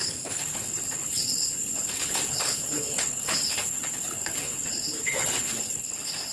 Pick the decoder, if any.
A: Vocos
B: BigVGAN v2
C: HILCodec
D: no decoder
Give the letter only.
C